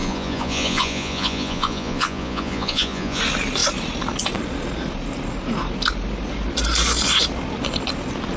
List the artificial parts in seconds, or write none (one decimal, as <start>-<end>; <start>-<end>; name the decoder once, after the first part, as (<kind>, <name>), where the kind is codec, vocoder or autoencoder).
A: 0.0-3.2 (vocoder, Vocos)